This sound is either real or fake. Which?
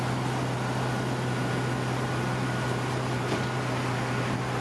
real